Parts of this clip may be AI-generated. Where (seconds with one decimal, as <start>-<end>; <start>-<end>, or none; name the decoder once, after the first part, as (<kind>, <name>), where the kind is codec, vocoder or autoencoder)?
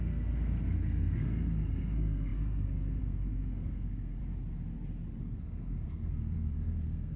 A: 0.0-4.2 (codec, SNAC); 5.2-7.2